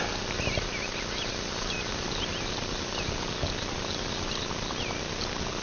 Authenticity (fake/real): real